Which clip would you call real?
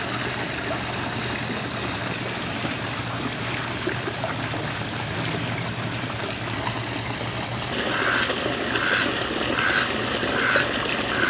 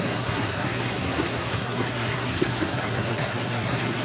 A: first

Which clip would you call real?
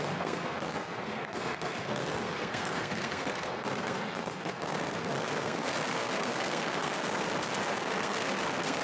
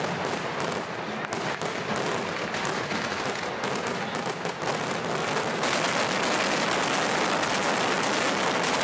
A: second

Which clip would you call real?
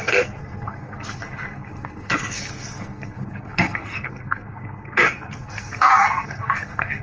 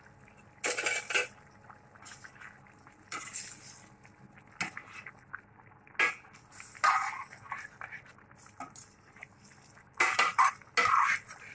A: second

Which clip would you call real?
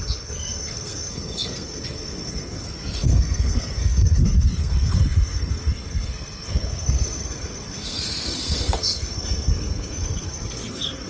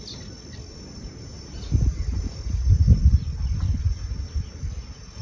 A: second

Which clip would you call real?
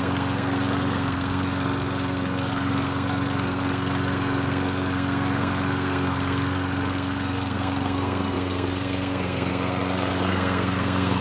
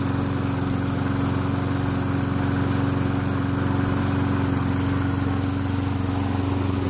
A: second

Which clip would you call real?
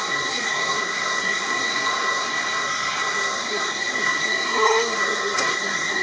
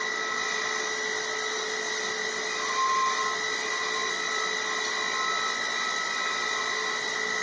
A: second